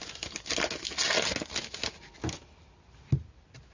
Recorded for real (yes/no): yes